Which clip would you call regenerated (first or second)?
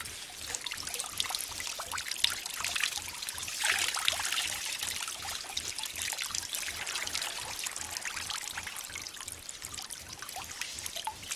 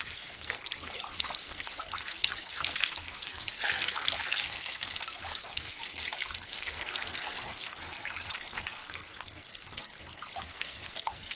second